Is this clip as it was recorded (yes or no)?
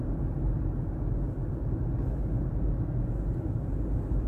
yes